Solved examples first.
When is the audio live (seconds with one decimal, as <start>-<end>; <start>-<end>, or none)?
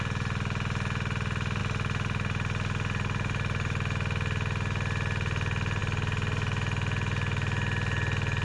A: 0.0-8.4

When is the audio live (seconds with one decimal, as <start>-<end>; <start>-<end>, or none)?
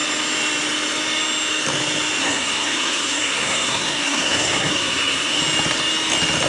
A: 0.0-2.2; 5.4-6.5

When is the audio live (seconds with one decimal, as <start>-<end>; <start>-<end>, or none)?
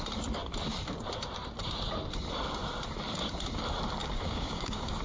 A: 0.0-4.0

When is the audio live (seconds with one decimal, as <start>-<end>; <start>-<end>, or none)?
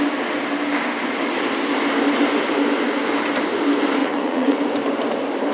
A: 0.0-4.0; 4.6-5.5